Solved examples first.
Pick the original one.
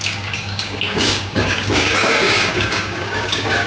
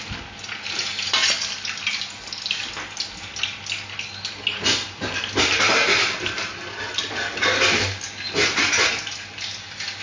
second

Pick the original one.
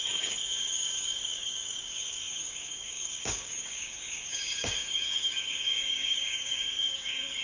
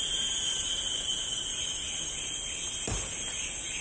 second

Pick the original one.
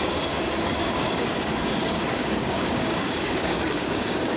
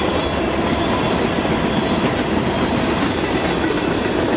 second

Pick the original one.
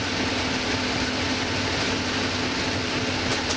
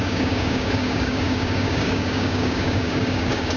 first